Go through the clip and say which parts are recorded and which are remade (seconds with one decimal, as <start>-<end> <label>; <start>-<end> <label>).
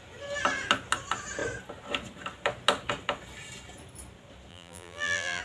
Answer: 0.0-4.5 recorded; 4.5-5.4 remade